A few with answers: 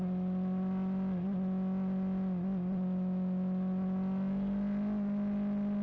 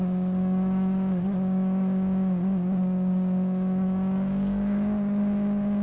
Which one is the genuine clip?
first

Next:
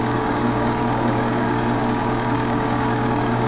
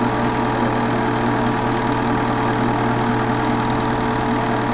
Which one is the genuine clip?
second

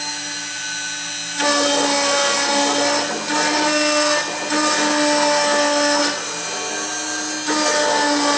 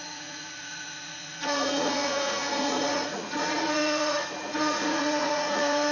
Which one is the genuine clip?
first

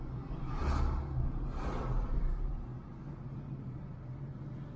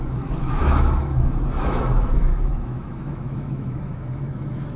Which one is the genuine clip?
first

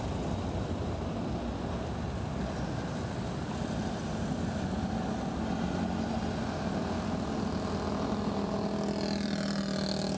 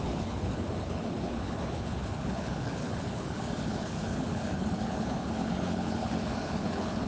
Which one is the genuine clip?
first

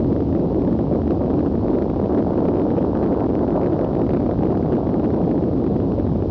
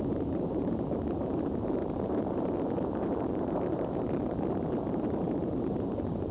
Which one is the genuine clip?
first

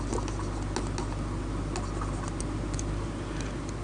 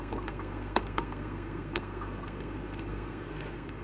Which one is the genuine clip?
first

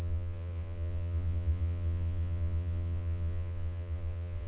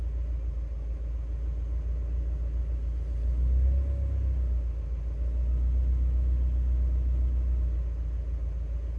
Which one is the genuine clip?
second